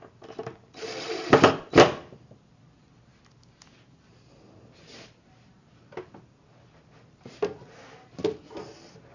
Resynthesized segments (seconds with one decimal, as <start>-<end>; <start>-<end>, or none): 0.4-2.6